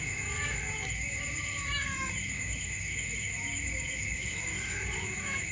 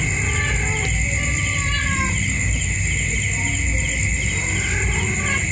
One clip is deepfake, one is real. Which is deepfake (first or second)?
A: first